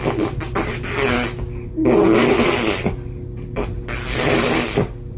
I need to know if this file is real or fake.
real